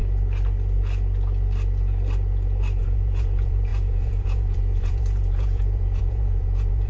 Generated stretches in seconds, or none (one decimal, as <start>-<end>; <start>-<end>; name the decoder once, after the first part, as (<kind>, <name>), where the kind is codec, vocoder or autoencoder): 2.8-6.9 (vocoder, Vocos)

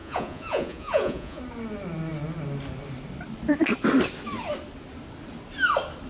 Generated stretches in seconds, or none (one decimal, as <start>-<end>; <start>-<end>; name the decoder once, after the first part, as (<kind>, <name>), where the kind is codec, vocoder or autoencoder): 0.0-1.4 (vocoder, Vocos)

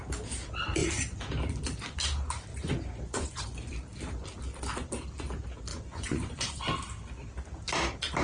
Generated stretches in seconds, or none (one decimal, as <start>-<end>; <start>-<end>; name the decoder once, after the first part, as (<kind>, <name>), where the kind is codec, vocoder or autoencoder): 2.5-3.7 (vocoder, Vocos); 5.7-6.6

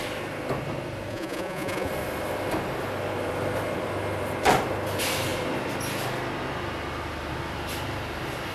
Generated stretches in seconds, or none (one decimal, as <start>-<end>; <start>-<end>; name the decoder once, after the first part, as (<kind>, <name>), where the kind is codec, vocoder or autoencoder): 1.1-1.9 (vocoder, Vocos)